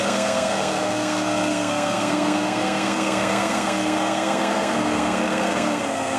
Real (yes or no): no